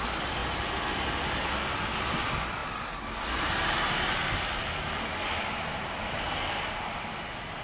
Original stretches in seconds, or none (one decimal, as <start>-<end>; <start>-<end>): 0.4-2.1; 2.6-3.5

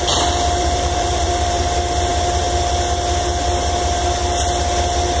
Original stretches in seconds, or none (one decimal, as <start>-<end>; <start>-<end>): 0.0-0.6; 1.6-5.2

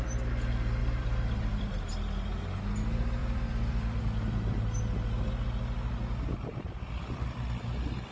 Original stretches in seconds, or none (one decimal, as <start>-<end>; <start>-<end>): 0.0-0.8; 1.9-3.2; 4.0-8.1

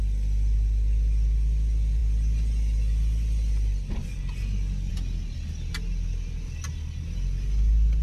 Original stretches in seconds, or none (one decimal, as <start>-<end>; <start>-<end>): 0.0-8.0

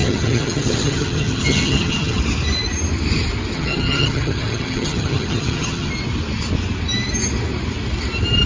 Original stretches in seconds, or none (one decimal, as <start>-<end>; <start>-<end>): 2.2-3.5; 5.9-8.5